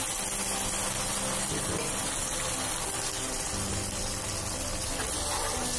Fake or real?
real